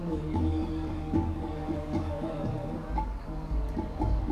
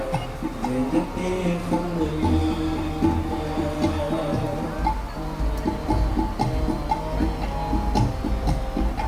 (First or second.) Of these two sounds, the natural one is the second